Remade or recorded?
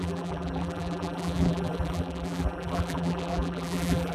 remade